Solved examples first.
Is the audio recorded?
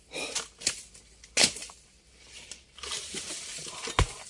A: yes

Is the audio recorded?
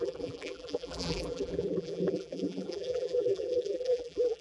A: no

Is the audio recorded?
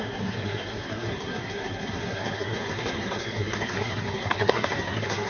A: no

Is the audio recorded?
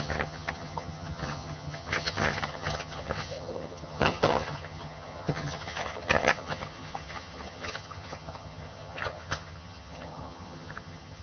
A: no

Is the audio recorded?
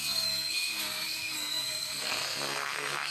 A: no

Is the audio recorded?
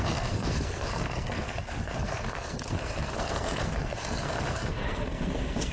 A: no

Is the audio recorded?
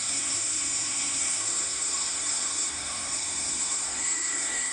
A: no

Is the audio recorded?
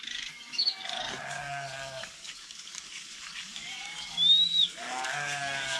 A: no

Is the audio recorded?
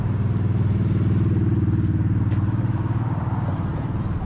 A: yes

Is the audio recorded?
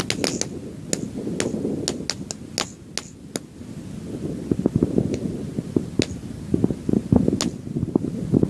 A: yes